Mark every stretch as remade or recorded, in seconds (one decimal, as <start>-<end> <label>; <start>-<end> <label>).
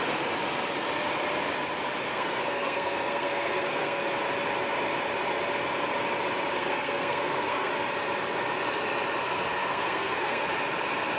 0.0-2.1 recorded; 2.1-4.0 remade; 4.0-6.5 recorded; 6.5-7.7 remade; 7.7-9.2 recorded; 9.2-10.4 remade; 10.4-11.2 recorded